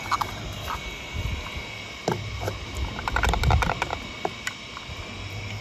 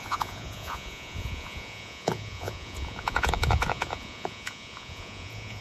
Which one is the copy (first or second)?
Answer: second